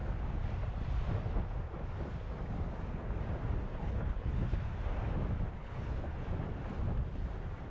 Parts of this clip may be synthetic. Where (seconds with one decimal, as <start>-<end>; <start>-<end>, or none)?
3.7-4.7; 5.5-6.3